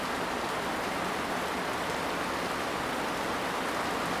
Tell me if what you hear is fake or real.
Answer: real